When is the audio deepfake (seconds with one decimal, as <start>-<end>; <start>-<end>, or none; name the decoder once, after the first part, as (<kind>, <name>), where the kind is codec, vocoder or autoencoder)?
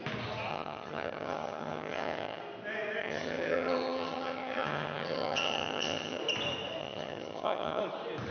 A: 0.5-2.4 (vocoder, HiFi-GAN); 3.0-6.2; 6.8-7.8